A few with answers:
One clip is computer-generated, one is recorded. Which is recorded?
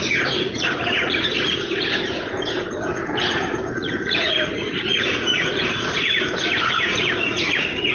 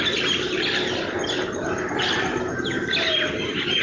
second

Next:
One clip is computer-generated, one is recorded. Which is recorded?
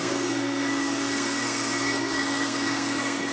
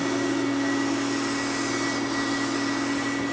second